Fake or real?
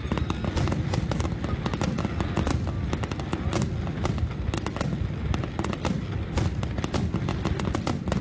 real